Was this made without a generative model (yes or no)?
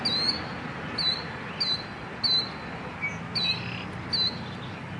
yes